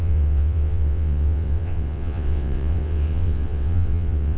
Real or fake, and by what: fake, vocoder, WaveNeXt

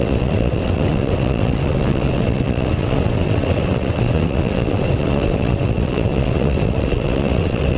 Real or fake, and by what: fake, vocoder, WaveNeXt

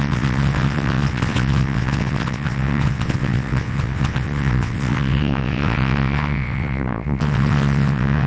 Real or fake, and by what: fake, vocoder, WaveNeXt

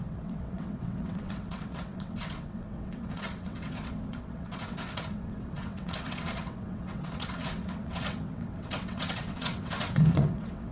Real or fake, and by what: fake, vocoder, WaveNeXt